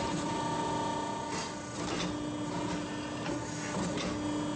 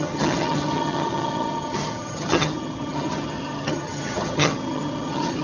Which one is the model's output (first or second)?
second